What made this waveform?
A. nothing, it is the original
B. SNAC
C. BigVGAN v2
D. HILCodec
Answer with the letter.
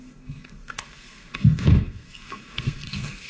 B